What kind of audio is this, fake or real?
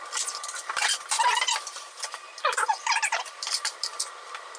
fake